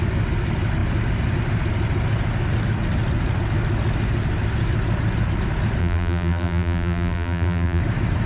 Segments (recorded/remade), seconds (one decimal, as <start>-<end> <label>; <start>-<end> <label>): 0.0-5.8 recorded; 5.8-7.8 remade; 7.8-8.3 recorded